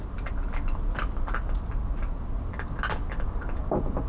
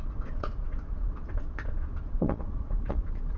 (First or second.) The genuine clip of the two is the first